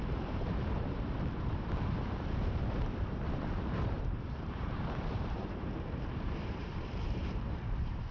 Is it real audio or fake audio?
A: fake